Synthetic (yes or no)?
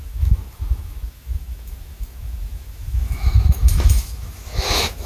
yes